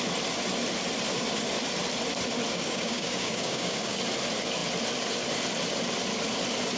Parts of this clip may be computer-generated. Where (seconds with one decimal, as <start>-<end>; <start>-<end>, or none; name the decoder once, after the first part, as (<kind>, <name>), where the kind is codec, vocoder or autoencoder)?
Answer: 2.5-4.0 (codec, DAC)